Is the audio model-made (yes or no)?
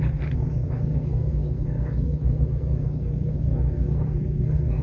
yes